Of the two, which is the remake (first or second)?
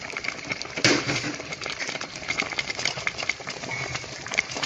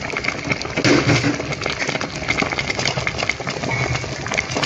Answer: first